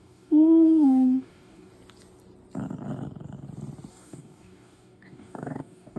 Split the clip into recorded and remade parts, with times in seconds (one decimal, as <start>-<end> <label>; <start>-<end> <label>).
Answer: 0.0-1.7 remade; 1.7-3.9 recorded; 3.9-6.0 remade